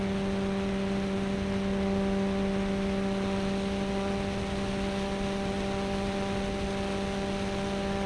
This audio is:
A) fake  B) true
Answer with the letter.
B